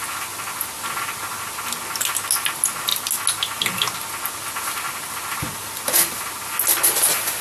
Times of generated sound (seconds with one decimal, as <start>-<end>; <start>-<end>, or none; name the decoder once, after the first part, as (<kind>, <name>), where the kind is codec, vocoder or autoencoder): none